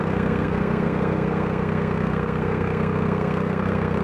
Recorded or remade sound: remade